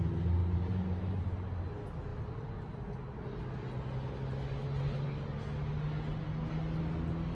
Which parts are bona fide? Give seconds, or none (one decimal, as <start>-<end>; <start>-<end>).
0.0-0.4; 1.2-7.3